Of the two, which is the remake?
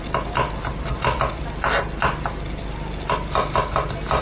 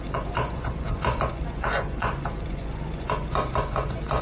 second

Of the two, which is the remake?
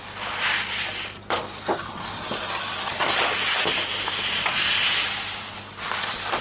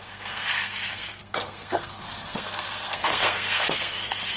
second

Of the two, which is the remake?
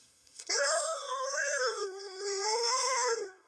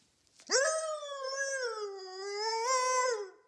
first